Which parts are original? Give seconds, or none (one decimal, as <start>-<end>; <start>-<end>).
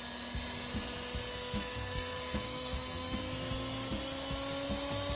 0.0-1.3; 3.2-5.2